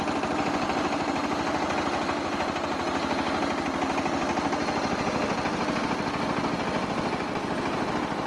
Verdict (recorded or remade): recorded